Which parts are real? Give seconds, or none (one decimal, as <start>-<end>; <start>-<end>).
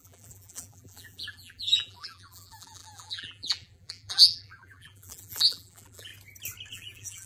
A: 6.1-6.7